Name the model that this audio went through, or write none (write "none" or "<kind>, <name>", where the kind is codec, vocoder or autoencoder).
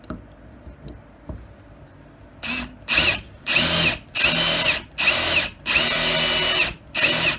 none